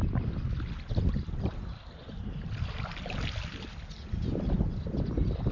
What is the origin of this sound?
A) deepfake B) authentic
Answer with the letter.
B